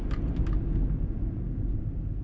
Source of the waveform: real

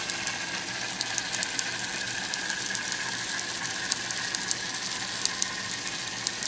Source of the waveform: real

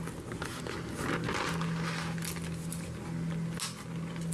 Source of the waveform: real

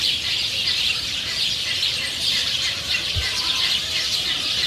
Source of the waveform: fake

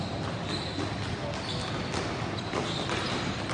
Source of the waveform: real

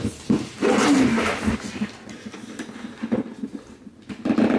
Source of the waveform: real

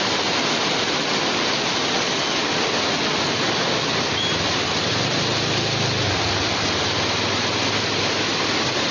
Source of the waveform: real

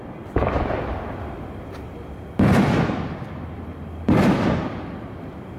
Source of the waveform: real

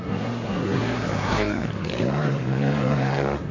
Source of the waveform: fake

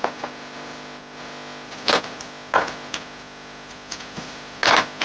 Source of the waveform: real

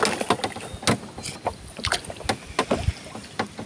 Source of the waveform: real